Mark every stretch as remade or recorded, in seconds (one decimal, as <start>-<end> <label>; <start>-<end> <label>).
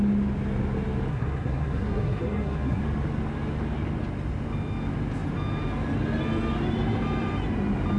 0.0-1.1 recorded; 1.1-2.8 remade; 2.8-8.0 recorded